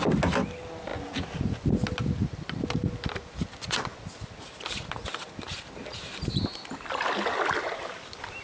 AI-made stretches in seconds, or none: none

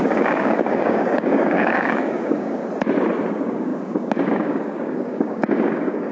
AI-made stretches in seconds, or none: 0.0-2.6 (codec, DAC); 3.3-6.1